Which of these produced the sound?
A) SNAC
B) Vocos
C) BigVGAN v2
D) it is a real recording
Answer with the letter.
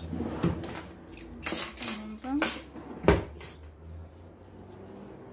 D